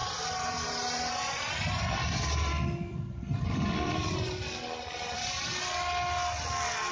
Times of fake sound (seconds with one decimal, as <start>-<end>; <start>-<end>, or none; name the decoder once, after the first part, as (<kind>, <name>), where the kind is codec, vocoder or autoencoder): 2.9-5.4 (vocoder, BigVGAN v2)